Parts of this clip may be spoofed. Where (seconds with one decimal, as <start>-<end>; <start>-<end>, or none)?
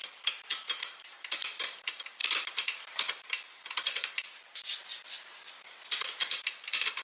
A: 0.0-4.7; 6.3-7.0